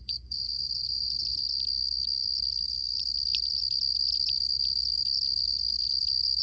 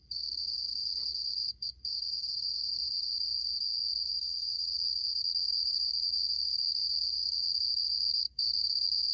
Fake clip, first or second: second